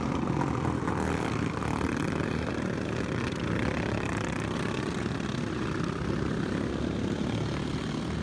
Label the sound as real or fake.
real